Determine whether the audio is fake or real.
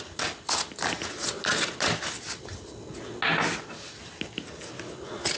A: real